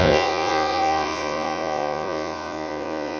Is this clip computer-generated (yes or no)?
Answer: yes